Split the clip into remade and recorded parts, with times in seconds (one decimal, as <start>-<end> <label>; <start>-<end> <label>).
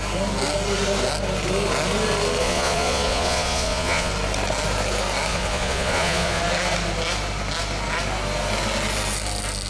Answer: 0.0-2.4 recorded; 2.4-4.1 remade; 4.1-5.3 recorded; 5.3-6.4 remade; 6.4-9.7 recorded